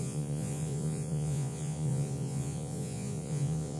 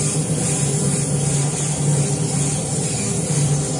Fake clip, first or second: first